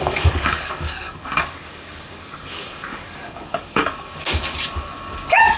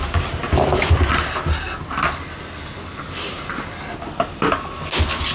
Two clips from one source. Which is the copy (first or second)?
first